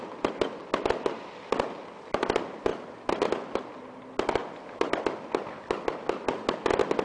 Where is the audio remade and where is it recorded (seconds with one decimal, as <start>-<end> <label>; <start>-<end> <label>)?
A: 0.0-7.0 recorded